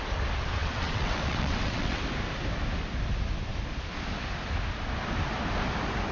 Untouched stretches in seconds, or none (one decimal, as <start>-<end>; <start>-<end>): 0.0-0.6; 2.0-6.1